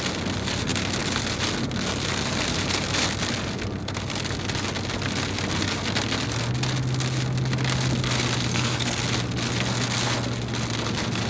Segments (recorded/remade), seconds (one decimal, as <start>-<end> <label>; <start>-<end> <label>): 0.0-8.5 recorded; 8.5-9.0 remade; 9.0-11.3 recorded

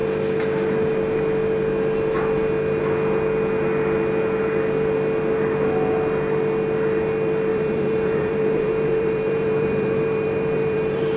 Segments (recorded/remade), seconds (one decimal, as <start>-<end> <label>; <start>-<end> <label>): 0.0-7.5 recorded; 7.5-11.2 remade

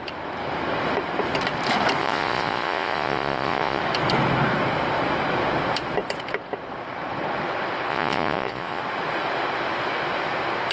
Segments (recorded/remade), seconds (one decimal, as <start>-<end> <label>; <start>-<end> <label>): 0.0-2.0 recorded; 2.0-3.8 remade; 3.8-7.9 recorded; 7.9-8.8 remade; 8.8-10.7 recorded